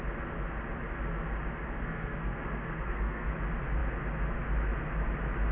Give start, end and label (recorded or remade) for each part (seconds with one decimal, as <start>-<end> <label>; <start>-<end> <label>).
0.0-1.6 recorded; 1.6-3.3 remade; 3.3-5.5 recorded